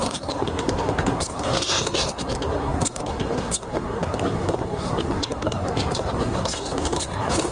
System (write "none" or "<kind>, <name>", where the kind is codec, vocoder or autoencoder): codec, SNAC